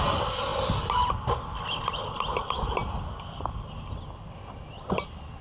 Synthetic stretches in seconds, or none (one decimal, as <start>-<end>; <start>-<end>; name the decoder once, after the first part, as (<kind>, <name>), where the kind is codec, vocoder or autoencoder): none